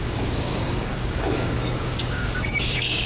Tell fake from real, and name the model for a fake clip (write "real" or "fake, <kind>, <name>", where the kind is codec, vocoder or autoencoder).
fake, codec, DAC